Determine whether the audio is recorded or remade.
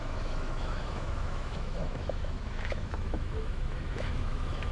remade